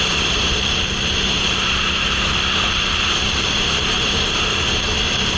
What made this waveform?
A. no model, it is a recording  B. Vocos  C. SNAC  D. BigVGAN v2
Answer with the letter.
D